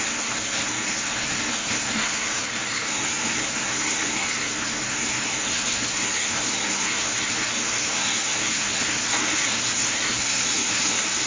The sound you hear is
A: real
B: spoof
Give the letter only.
B